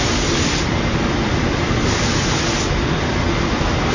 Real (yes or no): yes